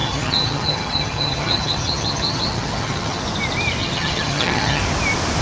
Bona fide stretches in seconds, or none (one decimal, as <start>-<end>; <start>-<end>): 3.2-3.8; 4.8-5.4